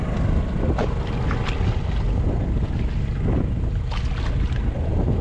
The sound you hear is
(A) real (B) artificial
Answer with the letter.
A